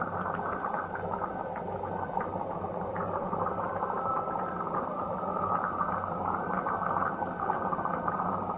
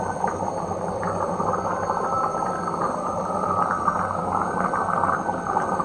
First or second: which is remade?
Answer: first